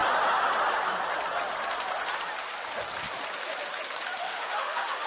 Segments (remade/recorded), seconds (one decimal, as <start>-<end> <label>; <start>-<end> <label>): 0.0-4.2 recorded; 4.2-5.1 remade